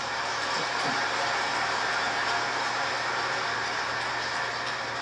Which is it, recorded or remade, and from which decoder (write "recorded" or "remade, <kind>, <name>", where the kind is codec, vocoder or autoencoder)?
remade, vocoder, BigVGAN v2